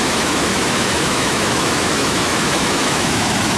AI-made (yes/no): yes